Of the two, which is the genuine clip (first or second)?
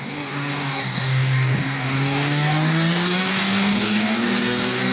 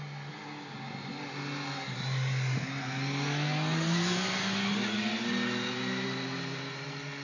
second